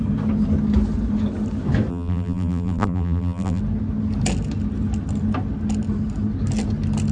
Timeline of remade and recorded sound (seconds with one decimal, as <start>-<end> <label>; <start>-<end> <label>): 0.0-1.9 recorded; 1.9-3.6 remade; 3.6-7.1 recorded